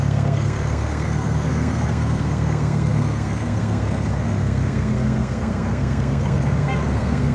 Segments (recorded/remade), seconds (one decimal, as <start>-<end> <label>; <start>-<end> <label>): 0.0-7.3 remade